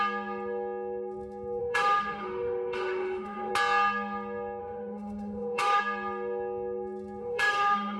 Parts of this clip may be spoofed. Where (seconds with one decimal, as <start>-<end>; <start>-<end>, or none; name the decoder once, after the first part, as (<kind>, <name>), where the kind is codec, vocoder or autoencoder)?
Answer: 1.6-3.5 (autoencoder, DAC-VAE); 4.6-5.8; 7.2-8.0